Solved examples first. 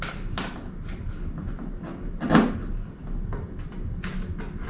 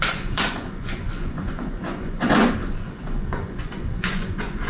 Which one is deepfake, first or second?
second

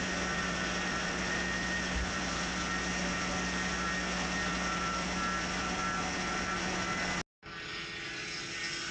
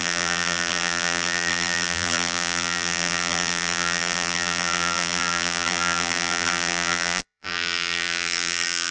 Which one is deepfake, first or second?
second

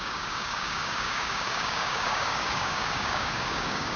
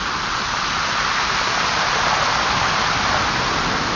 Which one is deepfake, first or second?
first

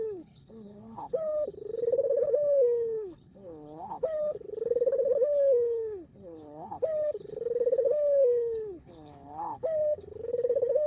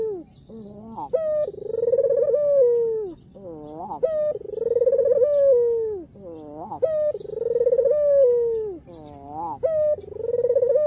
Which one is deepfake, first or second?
first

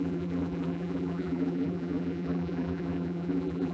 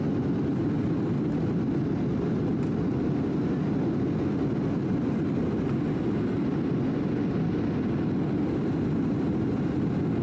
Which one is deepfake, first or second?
first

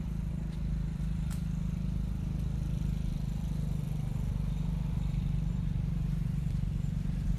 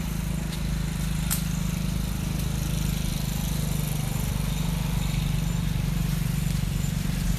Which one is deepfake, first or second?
first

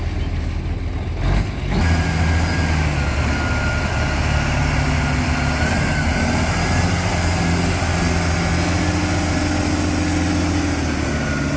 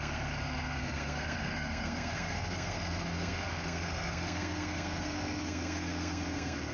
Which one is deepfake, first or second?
second